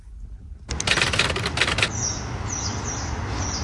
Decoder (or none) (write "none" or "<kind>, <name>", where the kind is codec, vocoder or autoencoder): none